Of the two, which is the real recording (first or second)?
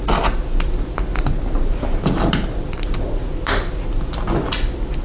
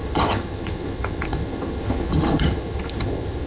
first